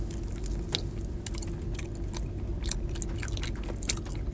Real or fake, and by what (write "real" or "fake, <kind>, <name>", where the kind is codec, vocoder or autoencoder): real